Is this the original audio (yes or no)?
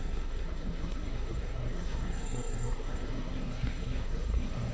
no